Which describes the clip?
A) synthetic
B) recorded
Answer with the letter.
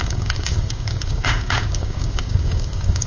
A